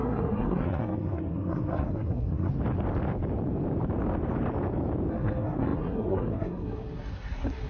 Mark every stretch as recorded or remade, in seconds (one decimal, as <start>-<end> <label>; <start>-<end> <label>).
0.0-2.5 remade; 2.5-5.1 recorded; 5.1-7.7 remade